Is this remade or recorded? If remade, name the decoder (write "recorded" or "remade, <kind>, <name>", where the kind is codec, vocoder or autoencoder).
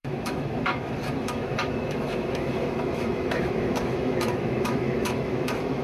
remade, autoencoder, DAC-VAE